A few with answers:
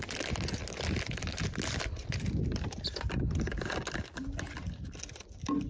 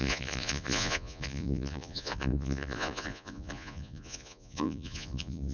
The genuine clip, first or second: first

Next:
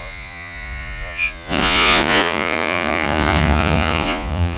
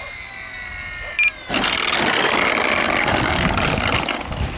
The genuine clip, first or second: second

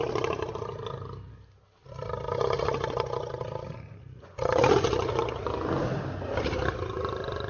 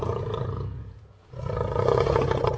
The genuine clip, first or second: first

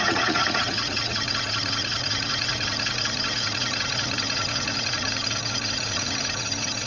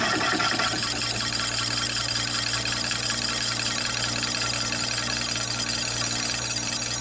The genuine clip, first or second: second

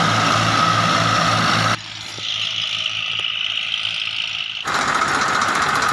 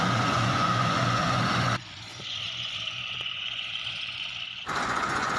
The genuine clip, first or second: first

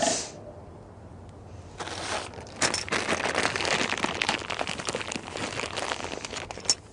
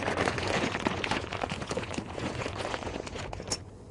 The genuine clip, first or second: first